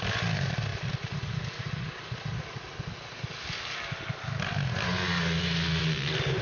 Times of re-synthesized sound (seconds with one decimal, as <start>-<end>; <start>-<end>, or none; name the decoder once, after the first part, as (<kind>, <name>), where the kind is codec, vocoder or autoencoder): none